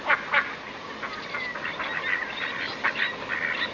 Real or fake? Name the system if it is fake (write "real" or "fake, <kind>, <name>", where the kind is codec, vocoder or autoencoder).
real